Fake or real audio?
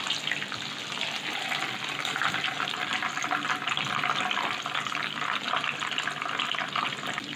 real